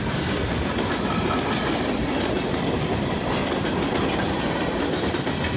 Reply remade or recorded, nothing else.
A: recorded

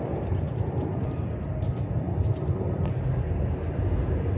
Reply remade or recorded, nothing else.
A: recorded